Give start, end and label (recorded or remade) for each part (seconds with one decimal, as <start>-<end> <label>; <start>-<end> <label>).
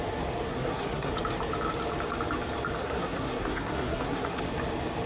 0.0-0.5 recorded; 0.5-1.1 remade; 1.1-2.8 recorded; 2.8-4.4 remade; 4.4-5.1 recorded